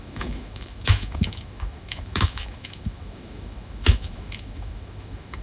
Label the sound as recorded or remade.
remade